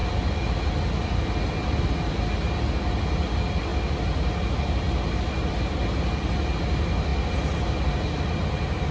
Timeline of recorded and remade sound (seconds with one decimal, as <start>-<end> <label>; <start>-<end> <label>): 0.0-8.9 recorded